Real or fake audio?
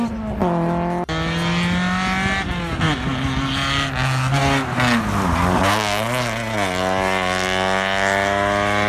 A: real